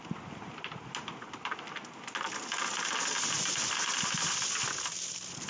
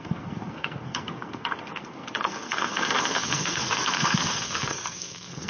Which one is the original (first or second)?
first